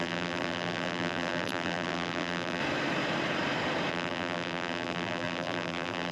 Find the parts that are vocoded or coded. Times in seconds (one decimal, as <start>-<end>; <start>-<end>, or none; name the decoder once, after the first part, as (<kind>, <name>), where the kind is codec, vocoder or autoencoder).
0.0-2.6 (vocoder, BigVGAN v2); 3.9-6.1